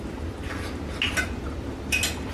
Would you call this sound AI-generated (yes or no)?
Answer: no